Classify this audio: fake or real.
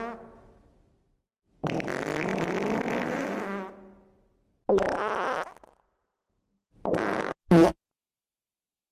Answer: real